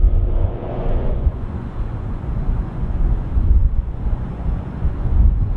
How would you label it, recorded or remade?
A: remade